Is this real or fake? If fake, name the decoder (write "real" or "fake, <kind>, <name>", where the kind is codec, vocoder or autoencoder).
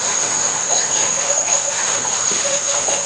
fake, autoencoder, DAC-VAE